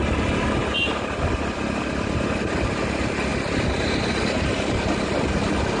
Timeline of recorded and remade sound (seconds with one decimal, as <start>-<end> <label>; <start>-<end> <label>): 0.0-5.8 recorded